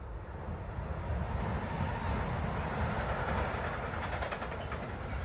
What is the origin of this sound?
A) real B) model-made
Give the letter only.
A